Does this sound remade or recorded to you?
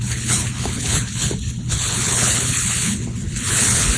remade